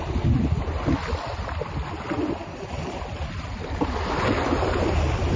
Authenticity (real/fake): real